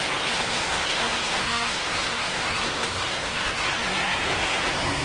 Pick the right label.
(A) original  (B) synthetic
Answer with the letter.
B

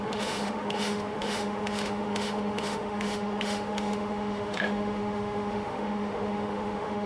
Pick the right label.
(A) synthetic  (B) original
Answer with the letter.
A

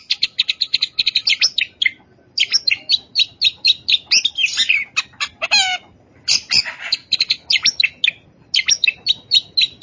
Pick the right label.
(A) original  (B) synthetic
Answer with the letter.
A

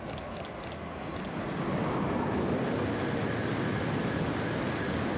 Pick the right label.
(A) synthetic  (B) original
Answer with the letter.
B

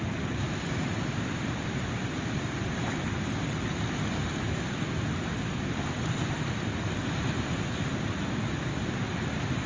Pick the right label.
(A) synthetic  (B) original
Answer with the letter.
A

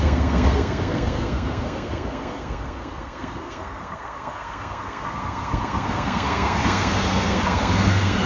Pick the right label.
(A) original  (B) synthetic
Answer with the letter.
B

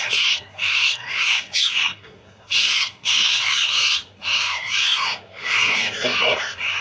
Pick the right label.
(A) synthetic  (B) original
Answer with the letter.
A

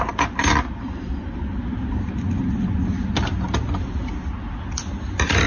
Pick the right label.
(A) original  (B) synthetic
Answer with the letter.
A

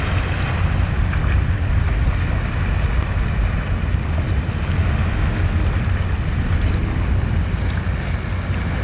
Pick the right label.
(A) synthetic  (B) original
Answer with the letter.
B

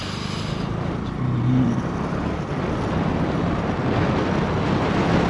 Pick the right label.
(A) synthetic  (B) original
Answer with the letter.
B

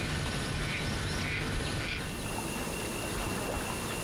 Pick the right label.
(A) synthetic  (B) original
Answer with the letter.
B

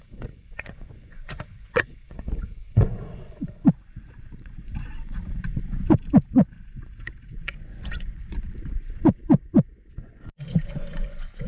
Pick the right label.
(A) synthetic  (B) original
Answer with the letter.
A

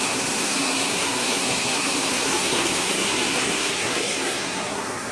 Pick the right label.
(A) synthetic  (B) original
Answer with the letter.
A